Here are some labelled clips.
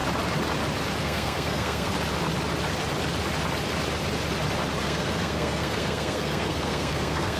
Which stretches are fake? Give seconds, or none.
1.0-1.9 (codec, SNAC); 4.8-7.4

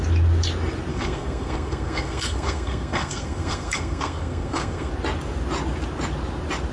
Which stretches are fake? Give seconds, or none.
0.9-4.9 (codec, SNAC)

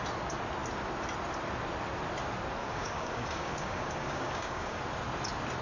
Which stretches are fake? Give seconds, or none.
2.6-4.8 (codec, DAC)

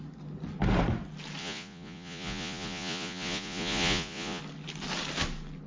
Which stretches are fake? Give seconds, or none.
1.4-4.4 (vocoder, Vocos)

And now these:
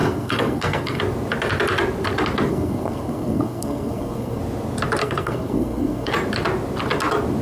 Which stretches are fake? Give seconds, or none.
0.0-1.0 (codec, SNAC); 2.5-4.4; 5.0-6.1